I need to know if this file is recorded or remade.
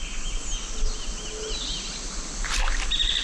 recorded